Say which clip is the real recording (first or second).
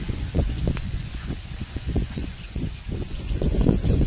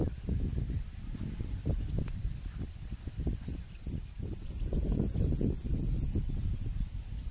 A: second